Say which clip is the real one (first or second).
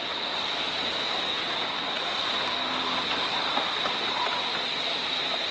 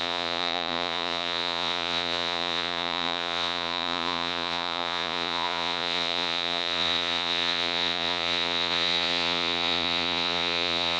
first